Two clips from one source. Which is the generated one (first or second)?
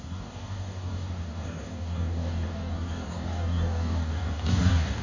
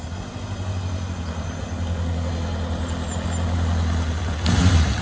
first